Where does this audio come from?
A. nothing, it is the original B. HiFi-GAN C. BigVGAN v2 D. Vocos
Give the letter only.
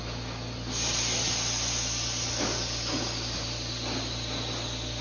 A